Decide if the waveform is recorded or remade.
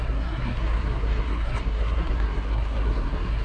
remade